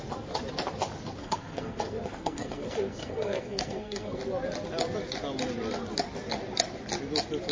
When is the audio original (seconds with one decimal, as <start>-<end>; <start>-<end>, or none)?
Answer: 0.0-1.2; 4.2-7.5